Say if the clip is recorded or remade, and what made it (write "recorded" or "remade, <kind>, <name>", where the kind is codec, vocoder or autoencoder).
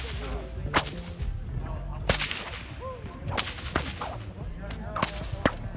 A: recorded